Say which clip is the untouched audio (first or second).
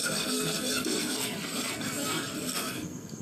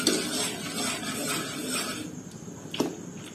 second